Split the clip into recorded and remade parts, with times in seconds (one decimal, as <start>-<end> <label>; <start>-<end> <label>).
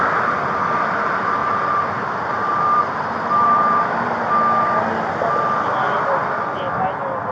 0.0-1.4 recorded; 1.4-4.3 remade; 4.3-7.3 recorded